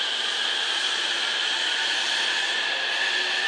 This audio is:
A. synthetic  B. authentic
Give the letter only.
B